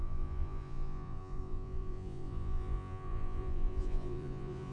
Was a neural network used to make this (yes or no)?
yes